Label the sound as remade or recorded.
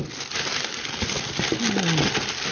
recorded